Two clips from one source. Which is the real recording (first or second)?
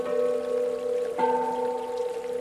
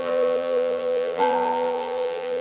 first